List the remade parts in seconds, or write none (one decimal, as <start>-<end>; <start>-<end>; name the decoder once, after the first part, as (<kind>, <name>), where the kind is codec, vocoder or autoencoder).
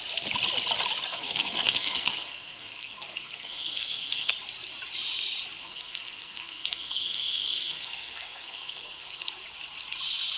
1.1-4.3 (codec, SNAC); 5.6-9.3